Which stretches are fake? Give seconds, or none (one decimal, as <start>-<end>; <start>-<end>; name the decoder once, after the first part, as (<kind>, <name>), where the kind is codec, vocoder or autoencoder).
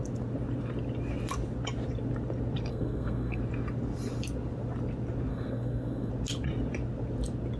2.7-3.4 (codec, SNAC); 5.3-6.1